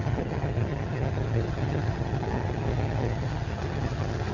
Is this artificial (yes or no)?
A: yes